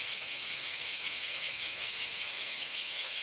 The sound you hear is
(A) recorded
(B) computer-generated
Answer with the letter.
B